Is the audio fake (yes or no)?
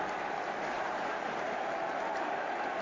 no